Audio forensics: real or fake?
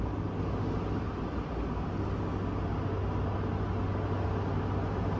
real